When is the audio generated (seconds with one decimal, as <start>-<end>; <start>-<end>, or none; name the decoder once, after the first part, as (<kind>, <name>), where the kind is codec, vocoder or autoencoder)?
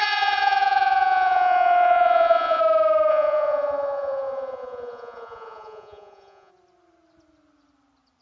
0.0-2.6 (vocoder, Vocos); 3.1-6.5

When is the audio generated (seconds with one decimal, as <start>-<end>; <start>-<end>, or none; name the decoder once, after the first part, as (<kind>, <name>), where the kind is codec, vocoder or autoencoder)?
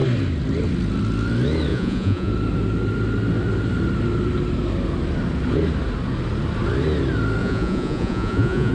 1.7-2.3 (vocoder, Vocos); 7.4-8.7